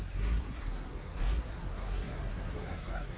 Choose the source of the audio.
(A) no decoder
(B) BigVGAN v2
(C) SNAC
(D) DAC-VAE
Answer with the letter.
C